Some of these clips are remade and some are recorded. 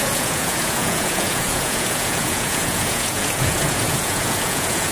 remade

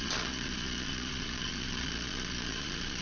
remade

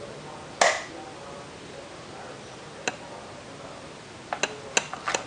recorded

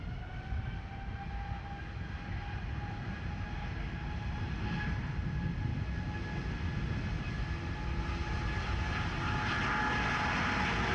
recorded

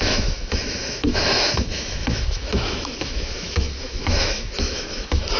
remade